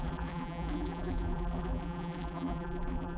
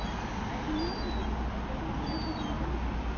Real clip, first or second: second